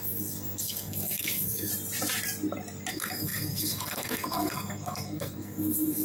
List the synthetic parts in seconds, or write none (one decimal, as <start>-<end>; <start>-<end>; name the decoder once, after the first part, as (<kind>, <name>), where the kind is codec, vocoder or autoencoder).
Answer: 0.0-1.7 (codec, SNAC); 2.9-6.0